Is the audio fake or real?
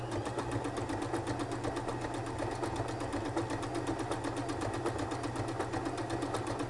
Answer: real